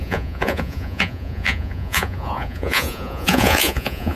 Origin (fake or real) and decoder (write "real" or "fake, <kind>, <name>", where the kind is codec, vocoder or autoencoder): fake, vocoder, Vocos